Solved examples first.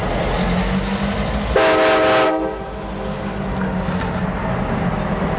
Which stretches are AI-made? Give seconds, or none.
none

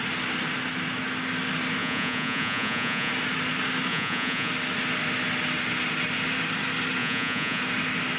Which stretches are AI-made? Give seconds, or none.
1.8-3.1 (vocoder, Vocos); 3.9-4.5; 7.0-7.6

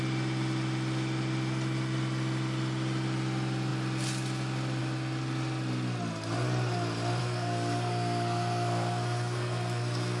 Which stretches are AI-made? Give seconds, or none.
7.2-10.2 (codec, SNAC)

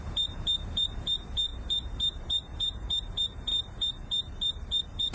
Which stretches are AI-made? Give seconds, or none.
0.0-5.1 (vocoder, BigVGAN v2)

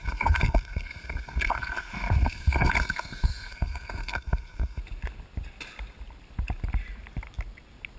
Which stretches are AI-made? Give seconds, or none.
0.0-4.8 (codec, SNAC)

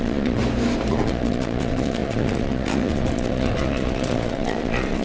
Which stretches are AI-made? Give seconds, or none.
0.0-0.4 (vocoder, Vocos); 0.9-5.0

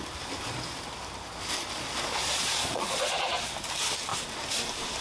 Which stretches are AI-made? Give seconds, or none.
2.2-3.3 (vocoder, Vocos)